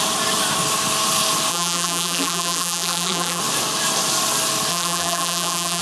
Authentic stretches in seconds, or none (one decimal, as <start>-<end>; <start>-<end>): 0.0-1.5; 3.4-4.7